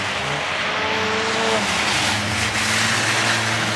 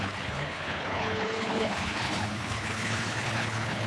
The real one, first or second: first